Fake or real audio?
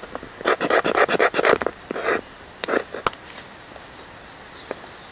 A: real